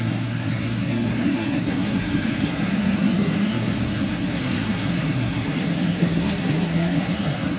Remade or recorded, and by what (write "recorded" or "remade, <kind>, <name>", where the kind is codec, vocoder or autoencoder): remade, codec, SNAC